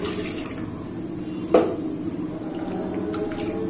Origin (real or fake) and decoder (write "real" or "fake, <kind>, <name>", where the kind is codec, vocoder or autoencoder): real